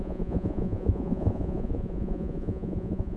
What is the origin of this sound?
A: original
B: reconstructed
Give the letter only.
B